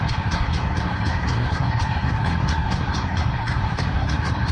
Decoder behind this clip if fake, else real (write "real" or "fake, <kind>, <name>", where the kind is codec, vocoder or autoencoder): fake, codec, SNAC